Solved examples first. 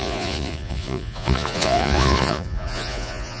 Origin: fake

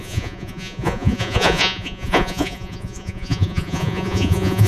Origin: fake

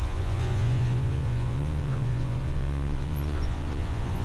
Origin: fake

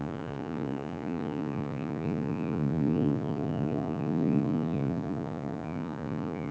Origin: fake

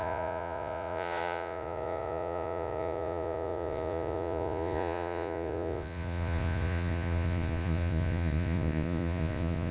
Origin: fake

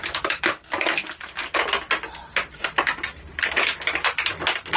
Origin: real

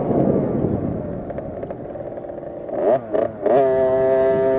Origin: real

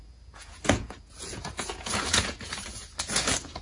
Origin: fake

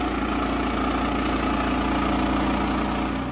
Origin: real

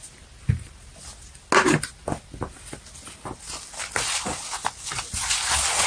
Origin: real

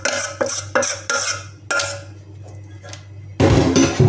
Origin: real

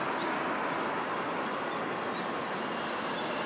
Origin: real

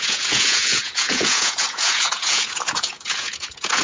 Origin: fake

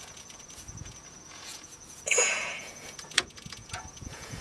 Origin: fake